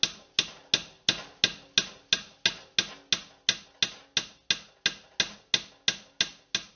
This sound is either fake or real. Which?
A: real